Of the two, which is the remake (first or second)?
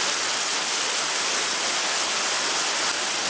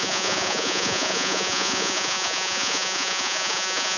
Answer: second